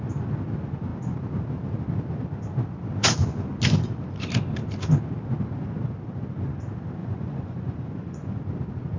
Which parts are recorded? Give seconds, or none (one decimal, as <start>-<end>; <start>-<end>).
0.0-7.0; 8.4-9.0